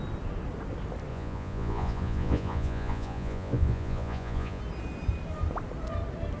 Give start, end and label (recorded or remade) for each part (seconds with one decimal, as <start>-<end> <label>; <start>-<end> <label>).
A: 0.0-1.1 recorded; 1.1-4.6 remade; 4.6-6.4 recorded